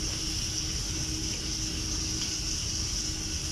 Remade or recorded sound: recorded